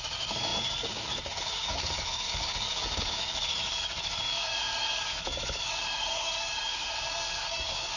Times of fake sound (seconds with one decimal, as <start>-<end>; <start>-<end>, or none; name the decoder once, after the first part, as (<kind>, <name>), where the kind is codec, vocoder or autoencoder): 0.0-8.0 (codec, DAC)

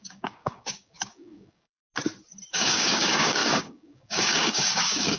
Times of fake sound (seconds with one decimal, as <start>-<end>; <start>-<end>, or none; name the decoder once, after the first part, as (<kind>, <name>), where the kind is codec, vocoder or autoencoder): 0.0-1.8 (codec, DAC); 2.5-5.2

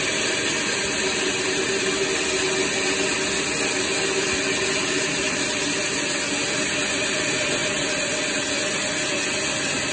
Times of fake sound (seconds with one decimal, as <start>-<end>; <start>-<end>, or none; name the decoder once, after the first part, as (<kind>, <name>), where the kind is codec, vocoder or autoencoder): none

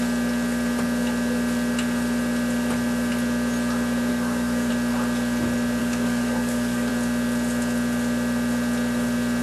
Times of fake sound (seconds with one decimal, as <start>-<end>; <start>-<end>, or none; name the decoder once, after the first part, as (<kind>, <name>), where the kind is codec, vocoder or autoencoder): 4.1-4.7 (codec, DAC); 5.8-6.9

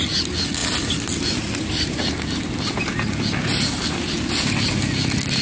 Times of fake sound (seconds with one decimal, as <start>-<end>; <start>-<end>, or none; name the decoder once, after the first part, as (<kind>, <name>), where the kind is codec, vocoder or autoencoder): none

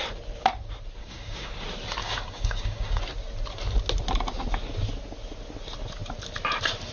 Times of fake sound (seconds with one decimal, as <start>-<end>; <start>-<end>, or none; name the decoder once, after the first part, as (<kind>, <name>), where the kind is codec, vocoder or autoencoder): 1.0-1.5 (codec, DAC); 2.0-3.0